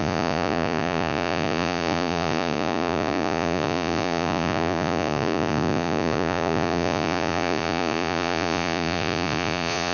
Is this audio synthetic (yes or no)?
yes